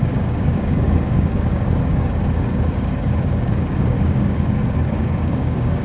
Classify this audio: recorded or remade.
remade